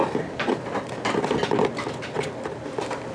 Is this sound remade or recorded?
recorded